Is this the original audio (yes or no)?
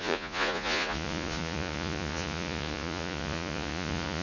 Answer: no